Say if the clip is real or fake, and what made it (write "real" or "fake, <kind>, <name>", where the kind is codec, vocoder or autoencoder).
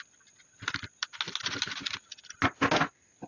real